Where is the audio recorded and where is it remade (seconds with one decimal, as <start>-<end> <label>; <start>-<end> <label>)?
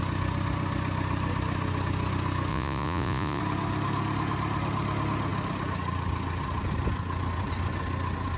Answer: 0.0-2.5 recorded; 2.5-3.4 remade; 3.4-8.4 recorded